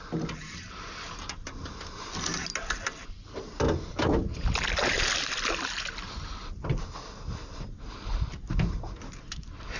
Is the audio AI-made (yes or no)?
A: no